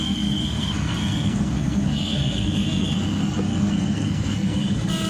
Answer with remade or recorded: remade